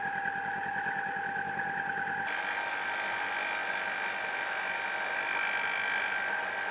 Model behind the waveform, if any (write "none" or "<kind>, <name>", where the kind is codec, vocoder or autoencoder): none